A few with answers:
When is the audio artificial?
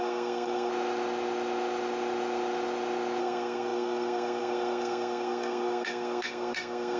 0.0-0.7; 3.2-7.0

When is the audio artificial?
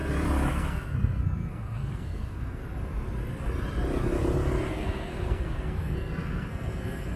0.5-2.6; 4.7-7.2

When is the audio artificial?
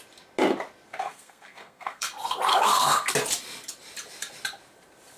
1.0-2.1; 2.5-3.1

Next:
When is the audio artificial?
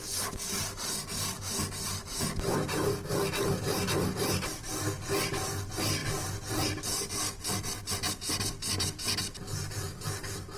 none